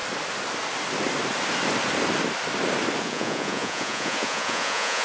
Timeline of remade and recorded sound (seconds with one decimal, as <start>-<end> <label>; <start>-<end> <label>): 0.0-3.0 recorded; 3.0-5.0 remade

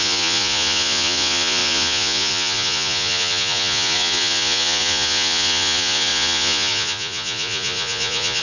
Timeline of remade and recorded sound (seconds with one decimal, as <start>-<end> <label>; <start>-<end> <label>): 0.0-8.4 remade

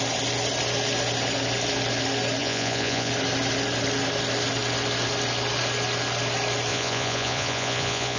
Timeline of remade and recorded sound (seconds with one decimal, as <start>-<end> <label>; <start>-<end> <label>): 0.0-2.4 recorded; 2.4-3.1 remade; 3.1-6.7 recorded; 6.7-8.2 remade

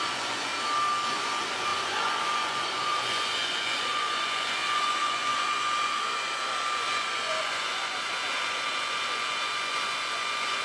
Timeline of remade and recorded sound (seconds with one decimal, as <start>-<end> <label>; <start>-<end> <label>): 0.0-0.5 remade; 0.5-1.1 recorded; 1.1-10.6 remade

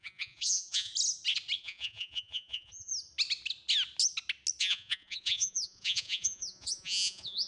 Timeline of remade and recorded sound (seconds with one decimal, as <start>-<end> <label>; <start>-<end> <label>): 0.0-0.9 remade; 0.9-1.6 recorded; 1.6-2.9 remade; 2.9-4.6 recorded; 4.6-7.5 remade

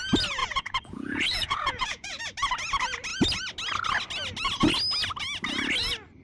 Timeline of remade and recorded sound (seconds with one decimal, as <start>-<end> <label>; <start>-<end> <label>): 0.0-0.4 recorded; 0.4-2.2 remade; 2.2-6.2 recorded